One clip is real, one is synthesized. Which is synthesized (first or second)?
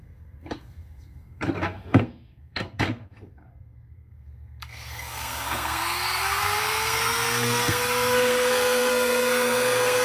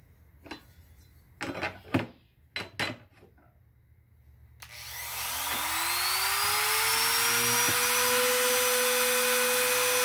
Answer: first